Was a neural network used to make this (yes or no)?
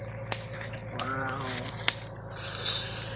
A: no